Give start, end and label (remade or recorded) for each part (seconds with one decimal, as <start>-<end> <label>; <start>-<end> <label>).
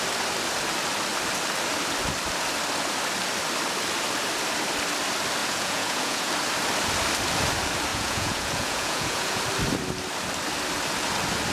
0.0-5.4 recorded; 5.4-6.3 remade; 6.3-7.9 recorded; 7.9-9.4 remade; 9.4-11.5 recorded